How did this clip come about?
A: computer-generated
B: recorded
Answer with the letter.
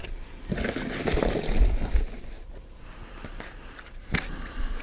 B